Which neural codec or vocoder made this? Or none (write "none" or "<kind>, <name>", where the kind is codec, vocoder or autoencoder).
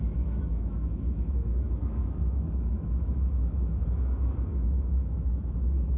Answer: autoencoder, DAC-VAE